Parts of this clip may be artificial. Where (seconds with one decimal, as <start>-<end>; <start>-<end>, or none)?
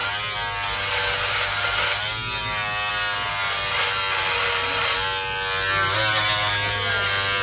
none